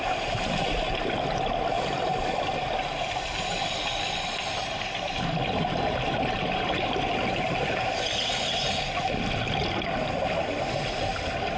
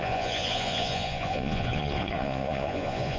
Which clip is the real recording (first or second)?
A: first